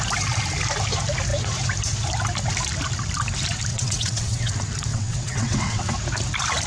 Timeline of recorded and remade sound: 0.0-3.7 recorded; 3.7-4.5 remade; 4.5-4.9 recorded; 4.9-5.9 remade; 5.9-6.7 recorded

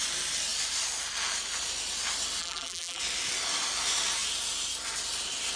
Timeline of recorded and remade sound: 0.0-2.4 recorded; 2.4-3.0 remade; 3.0-5.6 recorded

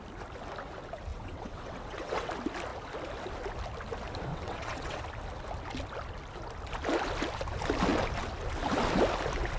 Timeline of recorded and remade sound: 0.0-1.1 recorded; 1.1-2.3 remade; 2.3-4.3 recorded; 4.3-5.0 remade; 5.0-9.6 recorded

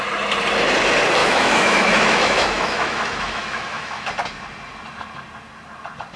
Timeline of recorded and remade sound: 0.0-1.2 recorded; 1.2-4.1 remade; 4.1-6.2 recorded

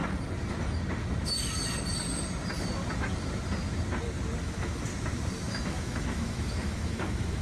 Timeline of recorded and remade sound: 0.0-4.4 recorded; 4.4-4.9 remade; 4.9-5.5 recorded; 5.5-7.4 remade

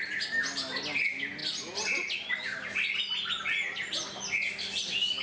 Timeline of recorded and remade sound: 0.0-5.2 recorded

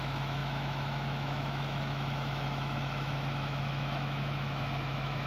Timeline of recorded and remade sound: 0.0-5.3 remade